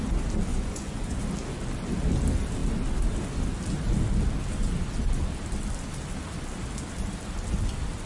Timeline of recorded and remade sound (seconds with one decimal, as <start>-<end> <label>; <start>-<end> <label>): 0.0-0.5 recorded; 0.5-1.2 remade; 1.2-8.1 recorded